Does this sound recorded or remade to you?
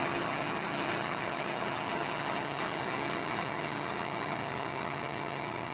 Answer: remade